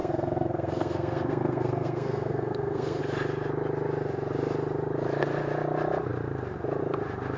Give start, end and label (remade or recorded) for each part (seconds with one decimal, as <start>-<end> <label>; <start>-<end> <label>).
0.0-3.0 remade; 3.0-7.4 recorded